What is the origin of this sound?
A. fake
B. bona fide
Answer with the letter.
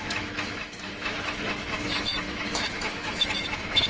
A